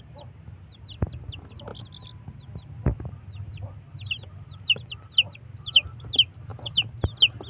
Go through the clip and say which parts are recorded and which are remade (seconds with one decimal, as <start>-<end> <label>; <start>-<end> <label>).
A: 0.0-7.5 recorded